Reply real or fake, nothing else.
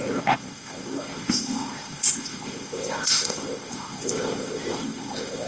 fake